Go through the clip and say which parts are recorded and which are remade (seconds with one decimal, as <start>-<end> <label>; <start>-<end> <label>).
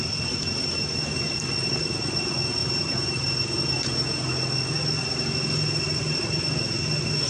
0.0-2.6 recorded; 2.6-4.3 remade; 4.3-7.3 recorded